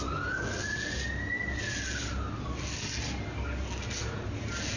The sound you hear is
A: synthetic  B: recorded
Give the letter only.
B